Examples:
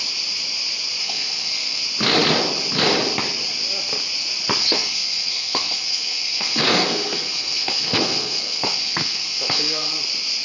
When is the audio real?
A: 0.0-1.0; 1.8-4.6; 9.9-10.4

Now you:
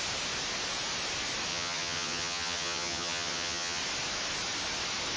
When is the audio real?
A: 0.0-1.5; 3.8-5.2

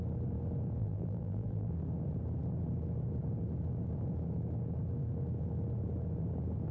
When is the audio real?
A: 0.0-0.8; 1.7-6.7

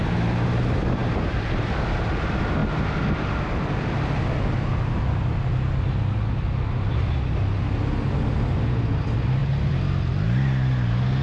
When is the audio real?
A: 0.0-11.2